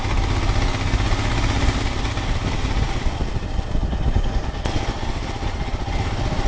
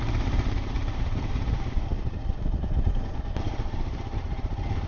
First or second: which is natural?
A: first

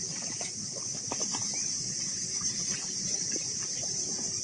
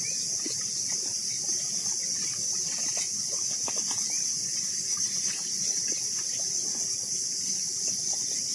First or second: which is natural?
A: second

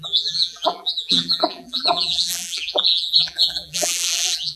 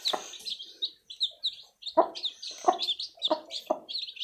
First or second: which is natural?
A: second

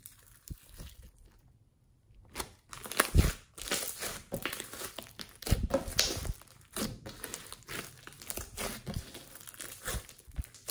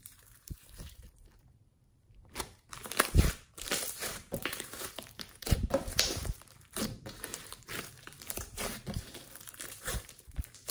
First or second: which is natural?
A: first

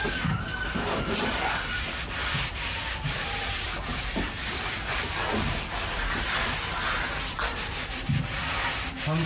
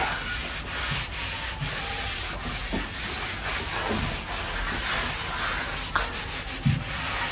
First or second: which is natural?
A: second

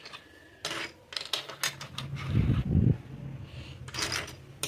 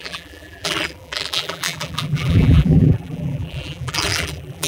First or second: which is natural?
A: first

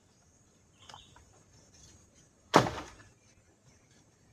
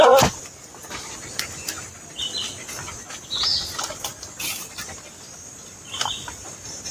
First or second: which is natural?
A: second